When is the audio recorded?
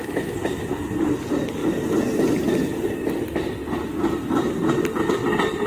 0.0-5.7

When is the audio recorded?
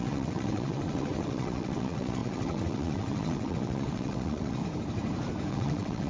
4.6-5.5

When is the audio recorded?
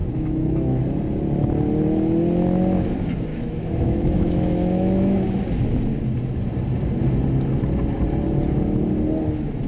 0.8-3.3; 5.4-9.7